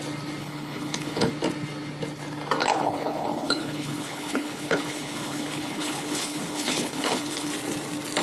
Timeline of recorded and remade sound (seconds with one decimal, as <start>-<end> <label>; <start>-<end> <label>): 0.0-0.4 recorded; 0.4-1.3 remade; 1.3-2.6 recorded; 2.6-7.5 remade; 7.5-8.2 recorded